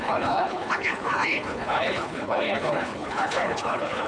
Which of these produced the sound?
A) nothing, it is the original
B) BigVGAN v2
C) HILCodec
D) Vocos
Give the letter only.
C